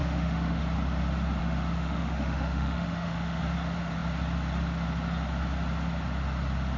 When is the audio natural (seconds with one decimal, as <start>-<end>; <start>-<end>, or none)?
0.6-1.4; 3.4-6.8